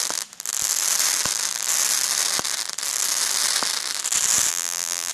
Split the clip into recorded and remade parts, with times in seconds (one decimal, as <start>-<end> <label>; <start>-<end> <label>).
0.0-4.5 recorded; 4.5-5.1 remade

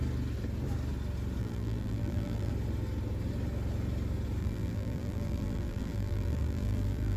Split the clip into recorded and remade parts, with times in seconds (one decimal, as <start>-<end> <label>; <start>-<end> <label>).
0.0-1.4 recorded; 1.4-2.5 remade; 2.5-4.4 recorded; 4.4-7.2 remade

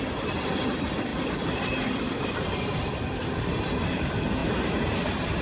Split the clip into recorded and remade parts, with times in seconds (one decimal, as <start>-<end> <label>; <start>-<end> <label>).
0.0-1.1 recorded; 1.1-2.3 remade; 2.3-5.4 recorded

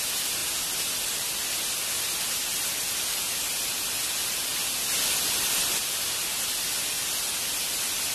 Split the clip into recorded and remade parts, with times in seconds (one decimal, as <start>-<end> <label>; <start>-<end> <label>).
0.0-2.7 recorded; 2.7-3.7 remade; 3.7-4.5 recorded; 4.5-5.8 remade; 5.8-8.1 recorded

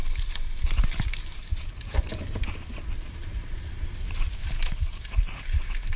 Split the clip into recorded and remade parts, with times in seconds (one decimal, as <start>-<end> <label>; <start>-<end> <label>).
0.0-0.7 recorded; 0.7-6.0 remade